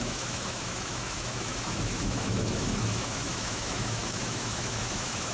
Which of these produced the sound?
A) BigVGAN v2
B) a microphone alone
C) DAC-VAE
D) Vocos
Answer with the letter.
C